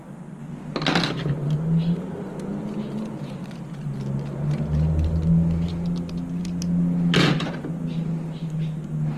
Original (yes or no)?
yes